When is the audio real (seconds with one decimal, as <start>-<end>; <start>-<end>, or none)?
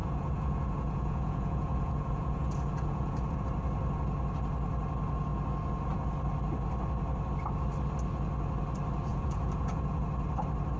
3.4-9.1; 10.0-10.8